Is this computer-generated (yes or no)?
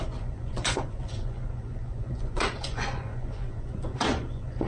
yes